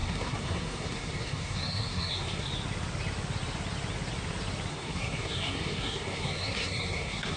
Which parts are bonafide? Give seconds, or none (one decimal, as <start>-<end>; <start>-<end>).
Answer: 2.5-4.7